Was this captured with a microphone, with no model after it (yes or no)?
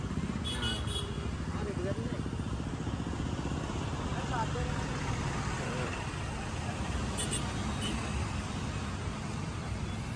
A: yes